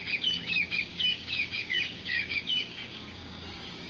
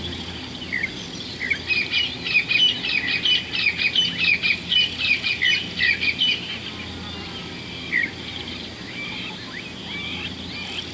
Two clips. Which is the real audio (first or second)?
second